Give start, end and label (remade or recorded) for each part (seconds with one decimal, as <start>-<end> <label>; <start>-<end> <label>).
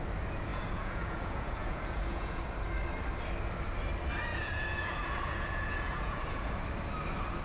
0.0-0.5 recorded; 0.5-2.4 remade; 2.4-4.3 recorded; 4.3-6.5 remade; 6.5-7.4 recorded